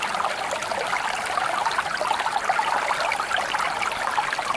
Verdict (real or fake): real